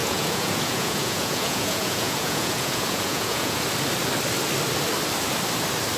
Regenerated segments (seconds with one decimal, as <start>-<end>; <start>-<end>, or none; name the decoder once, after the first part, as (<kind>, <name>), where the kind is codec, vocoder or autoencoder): 0.0-3.6 (vocoder, Vocos)